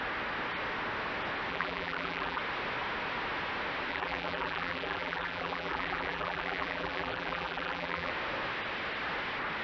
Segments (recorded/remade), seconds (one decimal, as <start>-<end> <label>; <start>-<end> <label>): 0.0-1.5 recorded; 1.5-2.4 remade; 2.4-3.9 recorded; 3.9-8.1 remade; 8.1-9.6 recorded